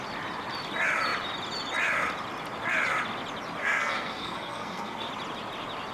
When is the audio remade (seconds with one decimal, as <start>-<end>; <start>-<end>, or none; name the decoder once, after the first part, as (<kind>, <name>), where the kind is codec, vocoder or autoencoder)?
3.6-5.1 (codec, SNAC)